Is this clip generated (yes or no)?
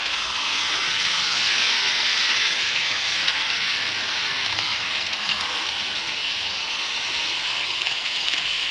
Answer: yes